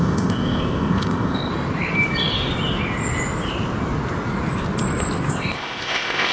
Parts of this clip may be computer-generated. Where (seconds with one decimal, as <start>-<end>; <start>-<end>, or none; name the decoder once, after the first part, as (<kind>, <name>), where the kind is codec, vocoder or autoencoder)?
0.0-1.5 (codec, ZipCodec); 5.3-6.3